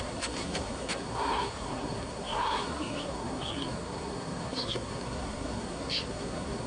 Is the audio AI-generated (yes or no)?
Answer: yes